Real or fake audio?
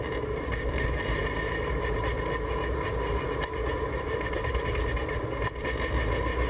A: real